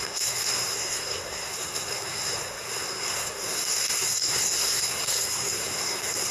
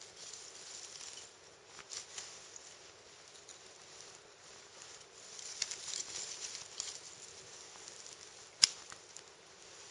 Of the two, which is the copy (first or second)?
first